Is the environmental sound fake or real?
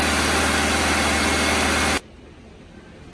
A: real